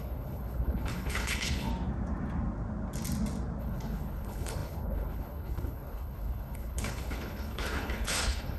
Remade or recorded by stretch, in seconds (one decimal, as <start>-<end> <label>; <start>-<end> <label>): 0.0-1.7 remade; 1.7-3.6 recorded; 3.6-8.6 remade